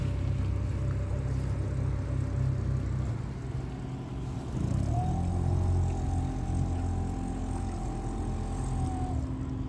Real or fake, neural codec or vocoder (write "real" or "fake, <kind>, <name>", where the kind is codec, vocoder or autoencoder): real